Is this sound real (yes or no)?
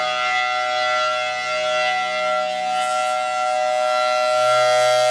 yes